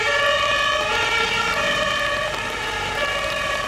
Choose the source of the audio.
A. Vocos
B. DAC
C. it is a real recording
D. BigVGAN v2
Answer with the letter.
D